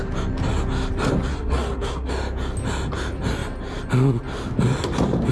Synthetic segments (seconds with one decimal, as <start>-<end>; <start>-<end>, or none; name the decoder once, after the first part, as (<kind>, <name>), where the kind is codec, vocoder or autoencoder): 1.3-2.1 (codec, SNAC)